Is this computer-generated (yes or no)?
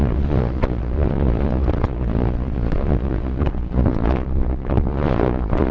yes